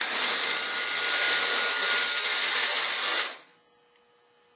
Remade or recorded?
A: recorded